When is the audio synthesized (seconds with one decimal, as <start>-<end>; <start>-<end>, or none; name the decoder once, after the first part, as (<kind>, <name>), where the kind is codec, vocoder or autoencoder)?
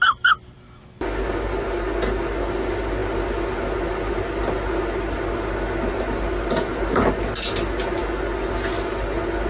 none